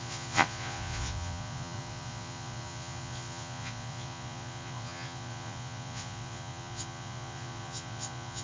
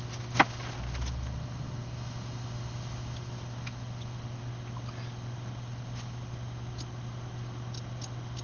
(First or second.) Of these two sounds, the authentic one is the second